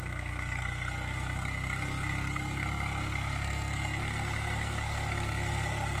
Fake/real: fake